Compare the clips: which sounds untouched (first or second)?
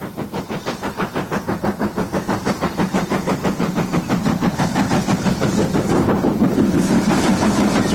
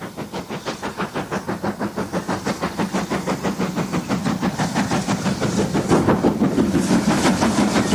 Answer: second